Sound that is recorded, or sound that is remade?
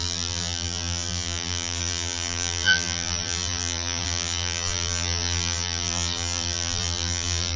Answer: remade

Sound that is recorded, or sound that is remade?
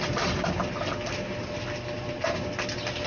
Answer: recorded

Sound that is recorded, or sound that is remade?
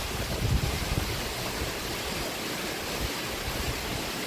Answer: recorded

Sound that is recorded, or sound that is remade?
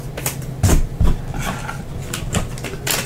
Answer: recorded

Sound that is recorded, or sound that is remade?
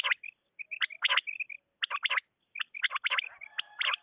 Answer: recorded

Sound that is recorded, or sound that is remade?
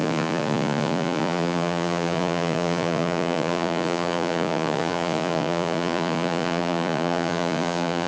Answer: remade